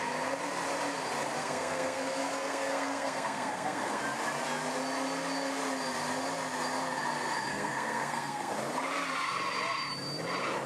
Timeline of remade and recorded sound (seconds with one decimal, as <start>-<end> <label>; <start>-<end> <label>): 0.0-1.4 recorded; 1.4-4.0 remade; 4.0-7.5 recorded; 7.5-8.5 remade; 8.5-10.7 recorded